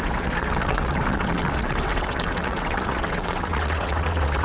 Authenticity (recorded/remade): remade